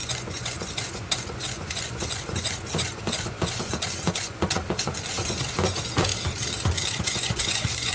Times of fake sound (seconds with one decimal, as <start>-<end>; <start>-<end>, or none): 0.0-6.1; 6.9-7.9